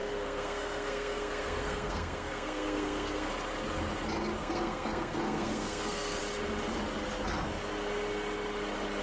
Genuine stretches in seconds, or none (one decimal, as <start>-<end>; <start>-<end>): 3.3-4.4; 6.2-9.0